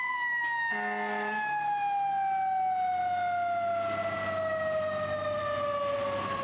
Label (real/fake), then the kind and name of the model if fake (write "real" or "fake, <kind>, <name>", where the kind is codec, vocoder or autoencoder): real